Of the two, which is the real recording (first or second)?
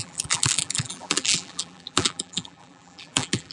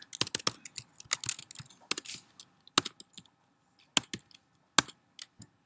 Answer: second